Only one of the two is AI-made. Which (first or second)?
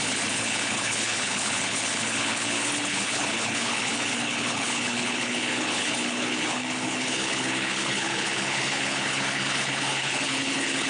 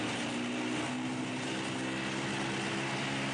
first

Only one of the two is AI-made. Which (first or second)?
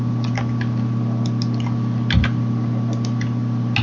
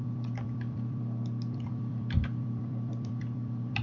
second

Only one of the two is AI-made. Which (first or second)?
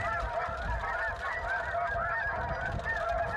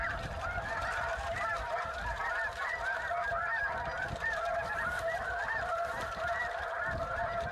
second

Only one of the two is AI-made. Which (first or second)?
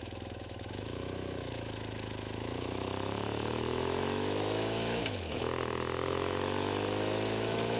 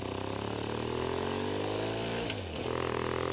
first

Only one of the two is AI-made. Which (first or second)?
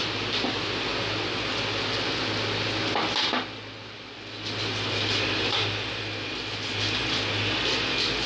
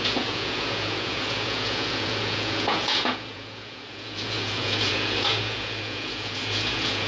second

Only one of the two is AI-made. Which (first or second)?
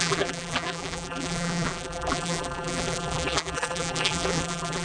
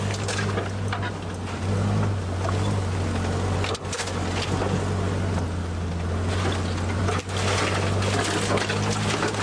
first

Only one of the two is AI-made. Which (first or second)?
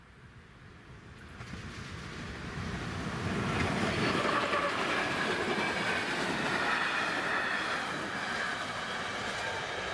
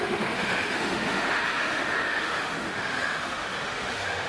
second